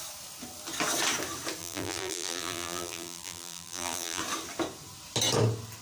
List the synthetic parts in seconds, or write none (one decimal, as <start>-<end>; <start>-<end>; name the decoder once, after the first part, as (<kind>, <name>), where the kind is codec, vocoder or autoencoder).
1.6-4.2 (vocoder, BigVGAN v2)